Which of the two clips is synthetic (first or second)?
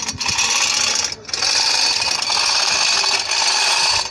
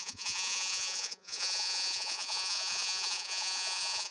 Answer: second